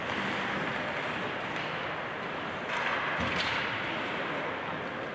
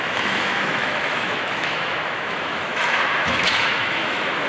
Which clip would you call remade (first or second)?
second